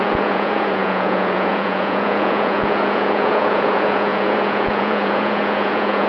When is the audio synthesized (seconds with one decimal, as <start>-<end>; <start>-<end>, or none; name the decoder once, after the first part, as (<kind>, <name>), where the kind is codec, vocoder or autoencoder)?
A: 0.0-6.1 (vocoder, Vocos)